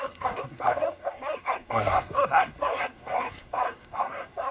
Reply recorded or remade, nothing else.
remade